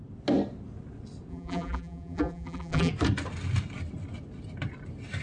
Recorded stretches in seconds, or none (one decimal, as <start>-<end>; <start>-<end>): 0.0-1.3; 2.9-5.2